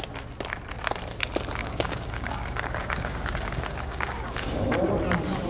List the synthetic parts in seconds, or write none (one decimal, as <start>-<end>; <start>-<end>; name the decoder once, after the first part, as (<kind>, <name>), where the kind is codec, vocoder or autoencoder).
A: 1.6-4.9 (codec, DAC)